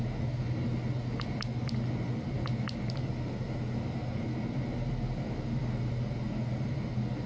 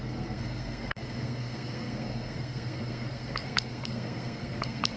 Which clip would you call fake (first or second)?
second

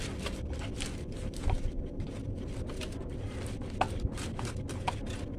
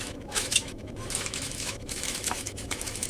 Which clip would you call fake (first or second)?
second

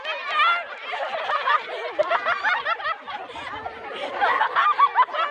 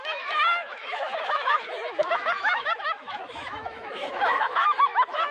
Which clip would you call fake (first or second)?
second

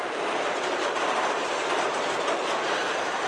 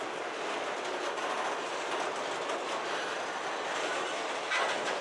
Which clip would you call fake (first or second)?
first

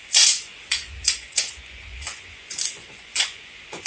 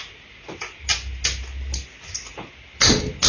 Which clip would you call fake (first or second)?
first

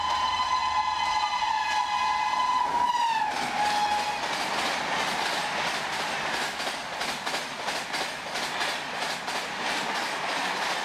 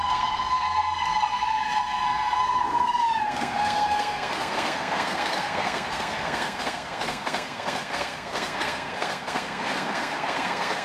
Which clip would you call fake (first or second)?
second